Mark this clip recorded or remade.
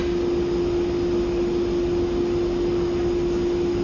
recorded